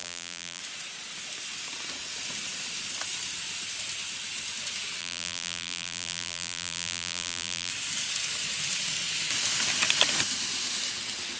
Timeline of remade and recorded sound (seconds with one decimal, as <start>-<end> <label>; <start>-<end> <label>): 0.0-0.6 remade; 0.6-5.0 recorded; 5.0-7.7 remade; 7.7-11.4 recorded